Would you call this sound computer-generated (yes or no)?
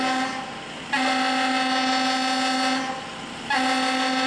no